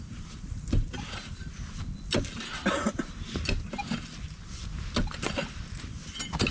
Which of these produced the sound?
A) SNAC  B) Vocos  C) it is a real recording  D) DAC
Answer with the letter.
C